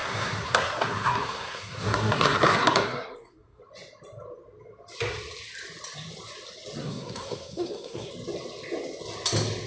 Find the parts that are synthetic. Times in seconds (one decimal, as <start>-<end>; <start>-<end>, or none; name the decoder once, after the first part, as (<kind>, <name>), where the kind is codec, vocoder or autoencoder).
0.0-3.6 (codec, SNAC); 6.8-8.1